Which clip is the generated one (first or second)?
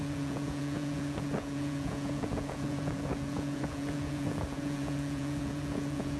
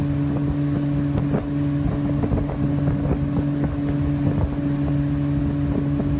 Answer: first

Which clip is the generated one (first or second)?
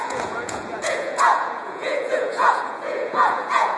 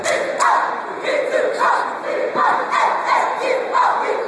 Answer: first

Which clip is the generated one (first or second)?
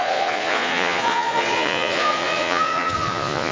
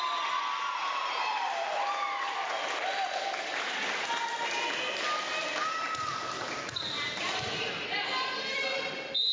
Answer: first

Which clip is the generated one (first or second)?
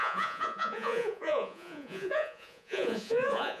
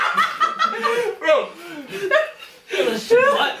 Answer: first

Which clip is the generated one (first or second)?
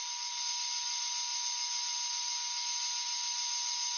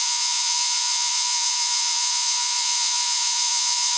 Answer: second